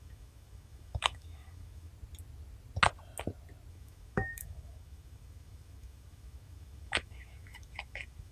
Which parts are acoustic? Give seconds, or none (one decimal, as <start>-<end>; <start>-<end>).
1.9-3.7